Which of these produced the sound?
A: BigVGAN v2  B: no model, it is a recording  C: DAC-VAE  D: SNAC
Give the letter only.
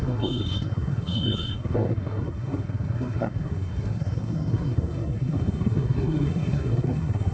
D